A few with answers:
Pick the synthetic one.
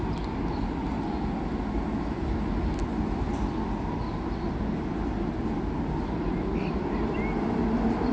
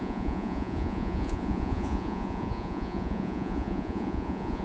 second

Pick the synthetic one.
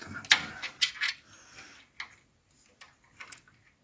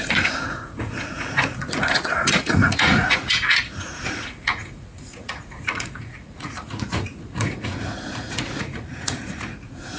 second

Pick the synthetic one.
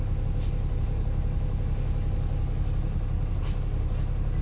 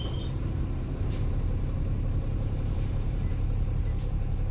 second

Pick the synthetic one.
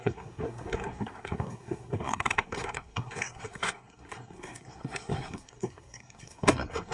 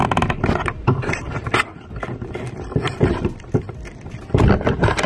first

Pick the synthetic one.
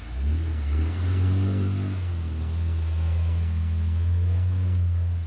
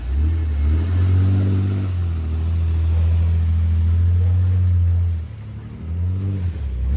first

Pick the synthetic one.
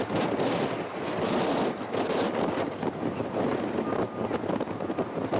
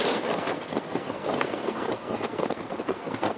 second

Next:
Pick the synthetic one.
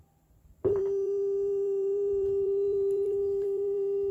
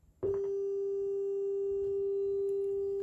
first